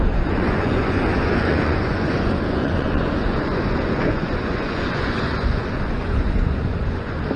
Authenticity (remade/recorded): remade